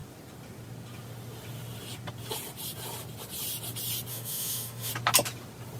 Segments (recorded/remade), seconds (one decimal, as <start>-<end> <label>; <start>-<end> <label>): 0.0-4.1 recorded; 4.1-4.9 remade; 4.9-5.8 recorded